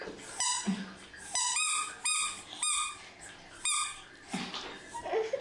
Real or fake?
real